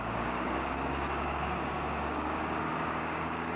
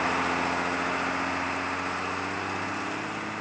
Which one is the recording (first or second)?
second